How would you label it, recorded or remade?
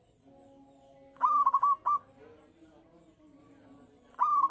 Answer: recorded